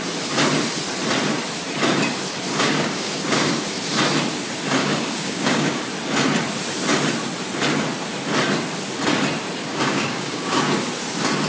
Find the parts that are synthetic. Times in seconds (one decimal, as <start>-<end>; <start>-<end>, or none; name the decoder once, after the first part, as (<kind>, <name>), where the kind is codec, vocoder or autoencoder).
2.5-3.5 (codec, DAC); 4.8-5.8; 9.7-10.9